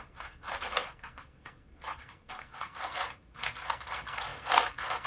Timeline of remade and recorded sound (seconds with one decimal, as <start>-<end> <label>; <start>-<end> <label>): 0.0-5.1 remade